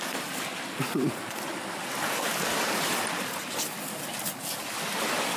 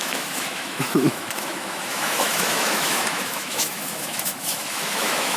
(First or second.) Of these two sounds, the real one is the first